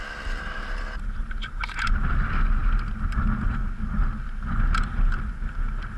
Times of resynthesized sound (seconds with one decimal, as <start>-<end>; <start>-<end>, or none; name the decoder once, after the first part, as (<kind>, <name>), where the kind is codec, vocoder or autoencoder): none

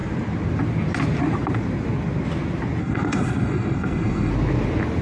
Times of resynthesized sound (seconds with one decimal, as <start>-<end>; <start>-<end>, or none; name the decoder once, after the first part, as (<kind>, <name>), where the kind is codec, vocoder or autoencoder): 2.8-4.3 (codec, SNAC)

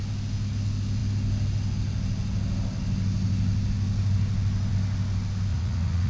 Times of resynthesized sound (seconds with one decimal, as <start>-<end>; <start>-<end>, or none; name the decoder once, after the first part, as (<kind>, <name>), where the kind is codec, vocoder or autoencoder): 5.5-6.1 (vocoder, Vocos)

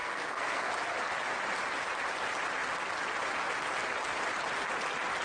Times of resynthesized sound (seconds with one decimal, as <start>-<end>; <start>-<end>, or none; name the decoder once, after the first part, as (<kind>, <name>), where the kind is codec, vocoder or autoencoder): 0.0-0.7 (codec, SNAC)

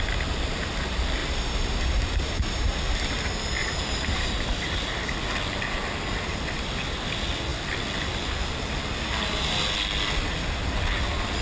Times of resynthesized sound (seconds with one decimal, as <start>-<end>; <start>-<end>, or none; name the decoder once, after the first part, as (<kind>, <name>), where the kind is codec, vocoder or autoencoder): 1.2-2.8 (vocoder, BigVGAN v2); 3.6-4.4

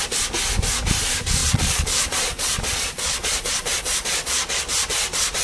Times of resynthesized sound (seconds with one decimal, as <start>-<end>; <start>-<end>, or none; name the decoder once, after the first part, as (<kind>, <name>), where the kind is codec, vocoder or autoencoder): 1.4-4.6 (vocoder, Vocos)